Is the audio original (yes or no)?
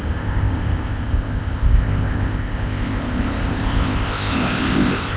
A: no